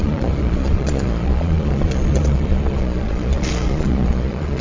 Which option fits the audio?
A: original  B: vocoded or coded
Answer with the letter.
B